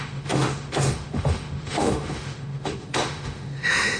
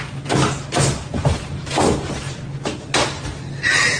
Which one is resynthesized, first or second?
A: first